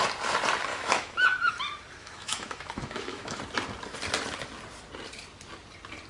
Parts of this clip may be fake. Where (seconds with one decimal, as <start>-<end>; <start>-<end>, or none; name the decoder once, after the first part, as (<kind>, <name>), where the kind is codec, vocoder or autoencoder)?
0.7-1.5 (autoencoder, DAC-VAE); 2.0-3.4